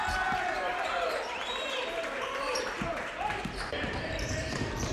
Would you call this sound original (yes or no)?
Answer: no